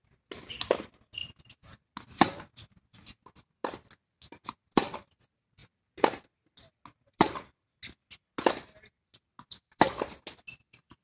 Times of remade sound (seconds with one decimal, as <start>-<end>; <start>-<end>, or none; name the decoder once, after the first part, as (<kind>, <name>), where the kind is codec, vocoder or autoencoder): none